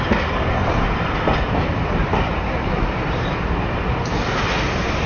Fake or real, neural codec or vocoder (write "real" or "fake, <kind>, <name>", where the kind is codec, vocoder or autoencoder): real